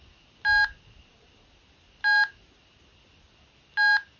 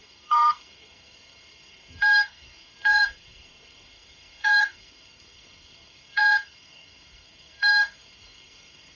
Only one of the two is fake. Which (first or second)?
second